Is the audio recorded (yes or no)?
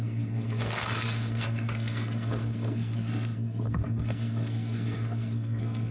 no